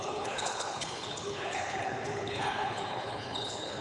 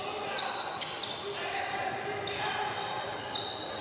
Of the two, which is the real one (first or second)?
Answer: second